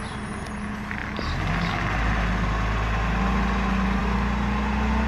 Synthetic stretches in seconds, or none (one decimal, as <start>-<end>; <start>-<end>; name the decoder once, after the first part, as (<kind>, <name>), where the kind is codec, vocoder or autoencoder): none